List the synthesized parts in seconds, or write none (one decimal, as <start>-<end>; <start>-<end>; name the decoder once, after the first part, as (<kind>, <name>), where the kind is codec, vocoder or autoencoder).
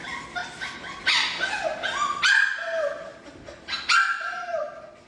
none